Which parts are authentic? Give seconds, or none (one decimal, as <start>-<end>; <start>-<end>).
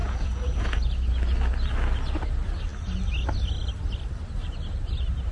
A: 0.8-5.3